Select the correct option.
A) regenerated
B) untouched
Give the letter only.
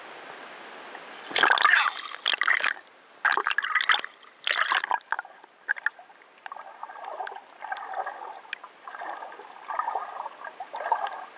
B